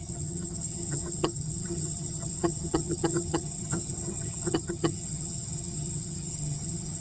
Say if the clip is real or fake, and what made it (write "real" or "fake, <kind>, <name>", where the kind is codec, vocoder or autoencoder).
fake, vocoder, HiFi-GAN